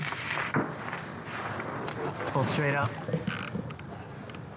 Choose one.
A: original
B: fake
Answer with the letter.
A